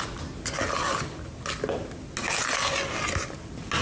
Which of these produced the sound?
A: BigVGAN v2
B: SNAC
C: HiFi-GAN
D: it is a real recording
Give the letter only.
D